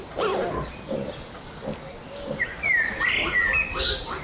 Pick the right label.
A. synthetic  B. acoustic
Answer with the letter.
B